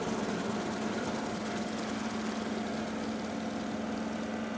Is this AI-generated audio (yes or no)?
no